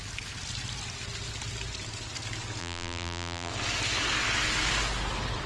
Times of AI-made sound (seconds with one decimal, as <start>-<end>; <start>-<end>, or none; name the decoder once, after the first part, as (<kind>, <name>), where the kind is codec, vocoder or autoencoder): 2.6-3.5 (vocoder, BigVGAN v2)